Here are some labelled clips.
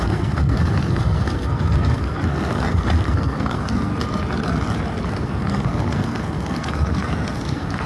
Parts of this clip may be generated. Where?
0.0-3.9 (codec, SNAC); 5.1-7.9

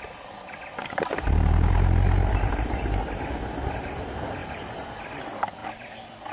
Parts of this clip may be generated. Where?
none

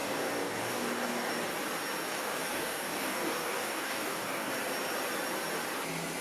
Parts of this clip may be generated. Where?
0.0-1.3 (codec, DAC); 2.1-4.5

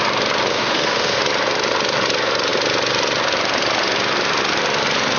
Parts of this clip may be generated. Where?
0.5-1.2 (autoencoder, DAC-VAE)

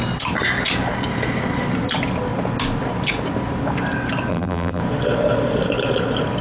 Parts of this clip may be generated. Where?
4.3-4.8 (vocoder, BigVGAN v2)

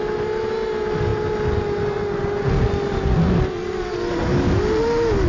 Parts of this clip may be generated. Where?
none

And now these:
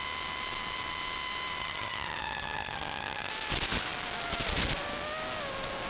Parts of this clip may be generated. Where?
1.6-3.3 (vocoder, HiFi-GAN)